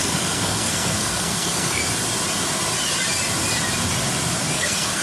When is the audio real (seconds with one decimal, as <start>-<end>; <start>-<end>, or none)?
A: 1.8-4.5